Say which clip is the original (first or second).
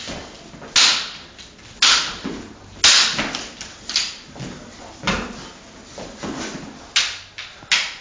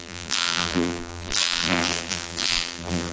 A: first